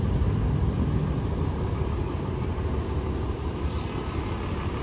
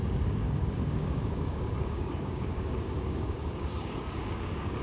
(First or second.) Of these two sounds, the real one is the first